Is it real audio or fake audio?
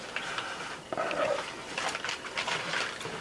real